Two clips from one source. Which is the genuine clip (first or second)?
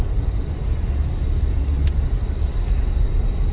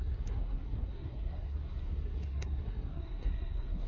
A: first